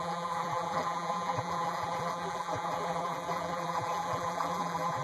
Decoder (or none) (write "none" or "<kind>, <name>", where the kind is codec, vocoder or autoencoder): vocoder, BigVGAN v2